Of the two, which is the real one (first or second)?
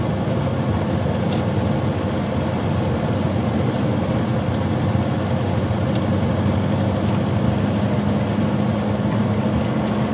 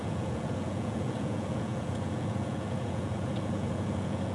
first